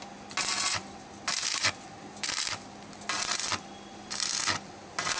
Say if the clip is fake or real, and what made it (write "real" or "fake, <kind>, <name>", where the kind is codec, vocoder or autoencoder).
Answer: real